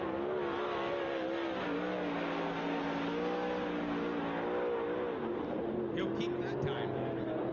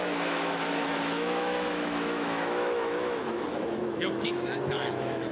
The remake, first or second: second